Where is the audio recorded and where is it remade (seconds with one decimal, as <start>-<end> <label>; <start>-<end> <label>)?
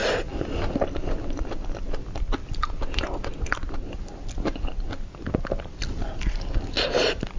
0.0-7.4 recorded